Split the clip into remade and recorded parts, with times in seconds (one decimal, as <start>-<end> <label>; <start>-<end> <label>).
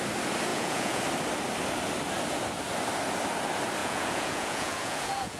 0.0-0.5 recorded; 0.5-1.0 remade; 1.0-3.8 recorded; 3.8-5.4 remade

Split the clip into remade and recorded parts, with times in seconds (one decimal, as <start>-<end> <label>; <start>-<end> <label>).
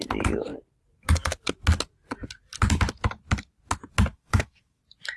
0.0-4.1 recorded; 4.1-4.8 remade; 4.8-5.2 recorded